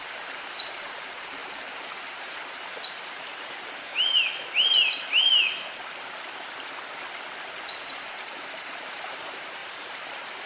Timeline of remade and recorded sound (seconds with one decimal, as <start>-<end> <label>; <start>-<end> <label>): 0.0-3.9 remade; 3.9-7.9 recorded; 7.9-10.5 remade

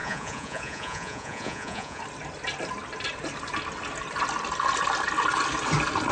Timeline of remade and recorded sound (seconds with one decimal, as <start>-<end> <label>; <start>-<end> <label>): 0.0-2.0 remade; 2.0-6.1 recorded

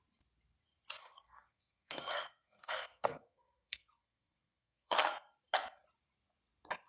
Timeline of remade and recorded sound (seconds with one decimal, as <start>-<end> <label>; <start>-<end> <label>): 0.0-1.0 recorded; 1.0-5.1 remade; 5.1-6.9 recorded

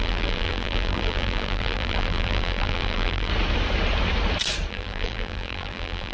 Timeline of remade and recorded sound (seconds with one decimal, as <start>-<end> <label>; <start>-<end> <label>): 0.0-3.3 remade; 3.3-4.7 recorded; 4.7-6.1 remade